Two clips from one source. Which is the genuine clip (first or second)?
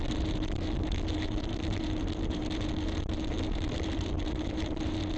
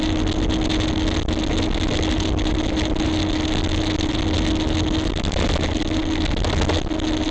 second